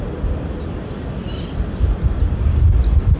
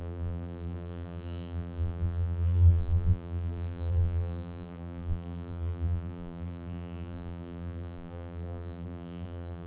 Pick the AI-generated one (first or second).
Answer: second